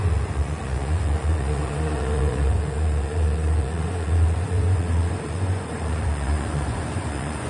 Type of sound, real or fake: fake